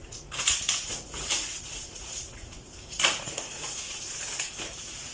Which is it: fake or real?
fake